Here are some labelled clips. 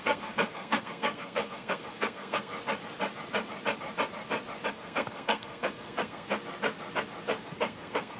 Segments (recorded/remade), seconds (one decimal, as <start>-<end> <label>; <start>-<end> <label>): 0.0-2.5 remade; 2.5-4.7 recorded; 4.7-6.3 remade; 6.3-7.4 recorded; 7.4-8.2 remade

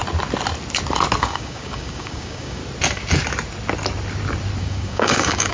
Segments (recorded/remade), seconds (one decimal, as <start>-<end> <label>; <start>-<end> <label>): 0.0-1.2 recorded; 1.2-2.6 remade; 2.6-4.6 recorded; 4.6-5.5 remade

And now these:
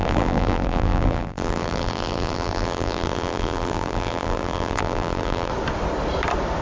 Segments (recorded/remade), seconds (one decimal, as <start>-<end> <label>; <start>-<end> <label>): 0.0-5.5 remade; 5.5-6.6 recorded

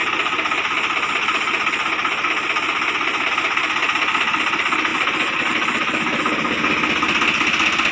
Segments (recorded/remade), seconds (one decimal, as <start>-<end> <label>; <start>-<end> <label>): 0.0-7.9 recorded

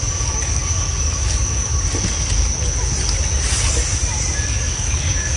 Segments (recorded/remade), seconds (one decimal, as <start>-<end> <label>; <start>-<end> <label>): 0.0-1.7 remade; 1.7-4.5 recorded; 4.5-5.4 remade

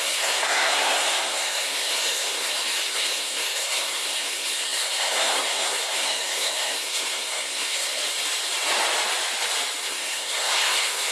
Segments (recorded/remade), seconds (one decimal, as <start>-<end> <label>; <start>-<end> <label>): 0.0-8.0 remade; 8.0-9.8 recorded; 9.8-11.1 remade